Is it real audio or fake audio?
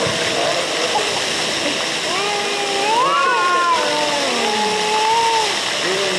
real